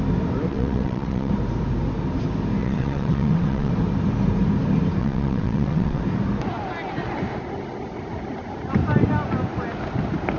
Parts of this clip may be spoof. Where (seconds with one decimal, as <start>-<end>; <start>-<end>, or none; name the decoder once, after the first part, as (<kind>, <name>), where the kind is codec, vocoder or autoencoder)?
0.5-1.3 (vocoder, WaveNeXt); 2.6-3.7; 5.0-6.0